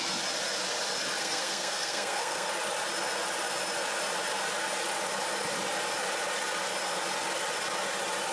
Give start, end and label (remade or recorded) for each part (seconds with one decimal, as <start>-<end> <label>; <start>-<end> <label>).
0.0-1.2 recorded; 1.2-2.5 remade; 2.5-8.3 recorded